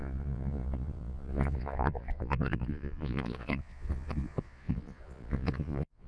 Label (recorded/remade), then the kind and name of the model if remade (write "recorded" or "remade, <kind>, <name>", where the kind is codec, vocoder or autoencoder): remade, vocoder, Vocos